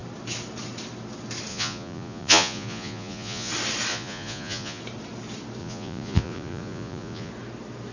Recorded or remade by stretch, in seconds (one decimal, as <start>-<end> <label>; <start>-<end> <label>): 0.0-1.5 recorded; 1.5-3.5 remade; 3.5-3.9 recorded; 3.9-4.8 remade; 4.8-5.6 recorded; 5.6-7.3 remade; 7.3-7.9 recorded